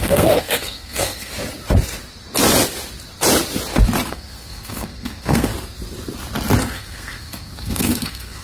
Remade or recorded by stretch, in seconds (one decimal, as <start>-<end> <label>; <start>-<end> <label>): 0.0-1.3 remade; 1.3-4.1 recorded; 4.1-5.5 remade; 5.5-6.6 recorded; 6.6-8.4 remade